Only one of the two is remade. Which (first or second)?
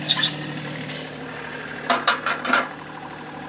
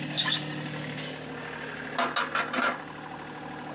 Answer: first